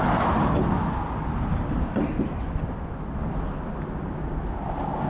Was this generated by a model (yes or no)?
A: no